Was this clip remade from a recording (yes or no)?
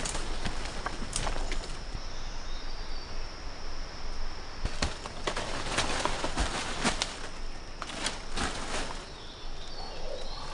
no